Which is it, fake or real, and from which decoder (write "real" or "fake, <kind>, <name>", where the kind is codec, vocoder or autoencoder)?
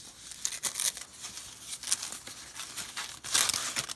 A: real